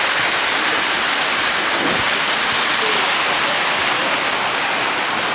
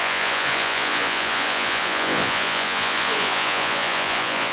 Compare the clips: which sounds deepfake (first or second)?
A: second